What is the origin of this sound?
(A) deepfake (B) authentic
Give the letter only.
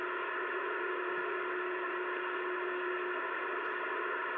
B